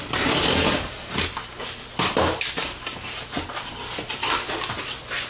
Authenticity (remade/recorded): recorded